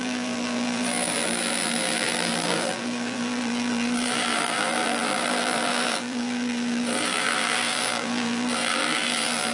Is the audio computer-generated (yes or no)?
yes